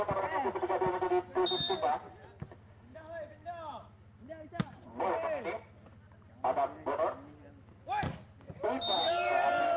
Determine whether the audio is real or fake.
real